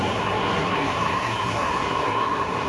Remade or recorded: remade